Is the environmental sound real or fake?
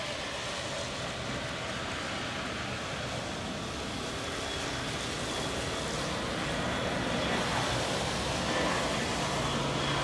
real